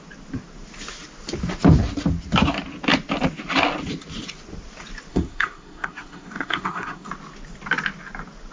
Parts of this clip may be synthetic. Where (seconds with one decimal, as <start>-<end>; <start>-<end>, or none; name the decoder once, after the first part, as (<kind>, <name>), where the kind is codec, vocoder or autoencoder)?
5.1-7.1 (codec, SNAC)